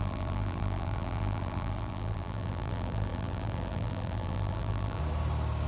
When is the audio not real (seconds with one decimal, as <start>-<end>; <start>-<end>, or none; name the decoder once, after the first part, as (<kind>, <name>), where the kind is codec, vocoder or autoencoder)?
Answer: 0.0-5.0 (vocoder, BigVGAN v2)